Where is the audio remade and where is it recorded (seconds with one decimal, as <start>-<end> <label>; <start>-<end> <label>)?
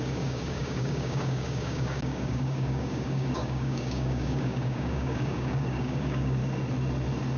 0.0-6.4 remade; 6.4-7.4 recorded